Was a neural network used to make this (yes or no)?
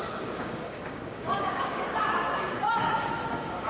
yes